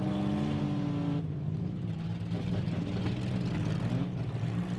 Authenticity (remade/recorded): recorded